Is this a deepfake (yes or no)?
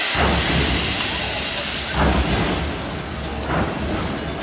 no